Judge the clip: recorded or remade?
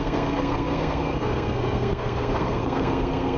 remade